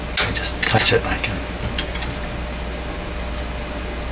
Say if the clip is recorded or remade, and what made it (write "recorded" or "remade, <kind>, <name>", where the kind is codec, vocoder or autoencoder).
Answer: recorded